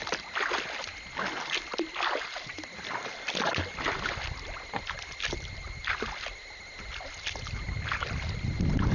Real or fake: real